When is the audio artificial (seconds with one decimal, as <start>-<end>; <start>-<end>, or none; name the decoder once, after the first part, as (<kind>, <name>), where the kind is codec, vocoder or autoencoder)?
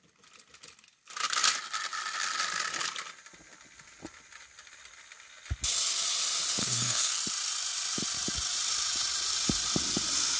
6.6-7.2 (codec, SNAC)